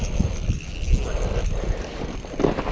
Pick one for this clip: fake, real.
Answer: real